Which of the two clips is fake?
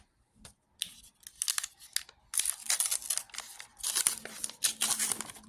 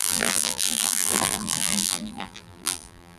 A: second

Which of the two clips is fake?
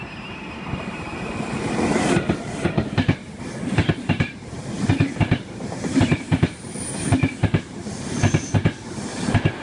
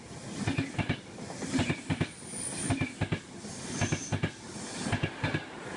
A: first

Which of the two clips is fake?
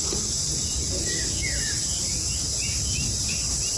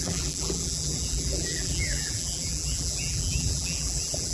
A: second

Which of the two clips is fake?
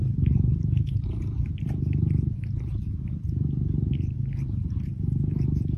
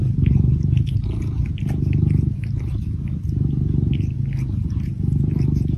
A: first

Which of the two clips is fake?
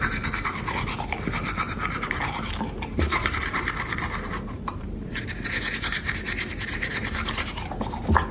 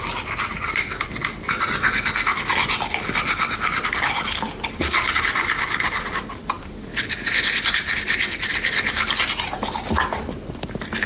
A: first